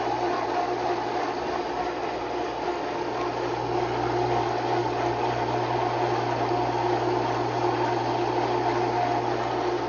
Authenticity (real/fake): real